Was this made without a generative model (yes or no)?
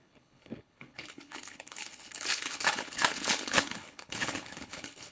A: no